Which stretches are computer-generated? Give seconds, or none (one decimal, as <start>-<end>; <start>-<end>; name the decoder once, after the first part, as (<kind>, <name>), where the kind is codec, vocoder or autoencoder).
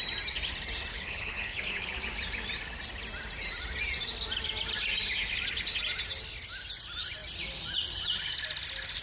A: 0.9-1.9 (codec, HILCodec)